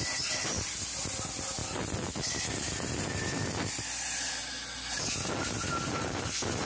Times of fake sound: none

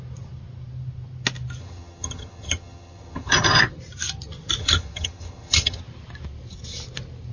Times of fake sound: 1.6-3.6 (vocoder, HiFi-GAN); 4.6-5.8

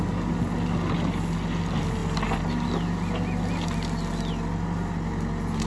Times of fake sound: none